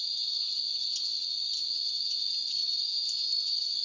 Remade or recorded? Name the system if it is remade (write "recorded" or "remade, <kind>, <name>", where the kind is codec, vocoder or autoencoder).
recorded